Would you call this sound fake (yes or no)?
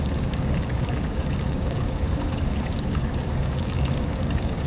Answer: yes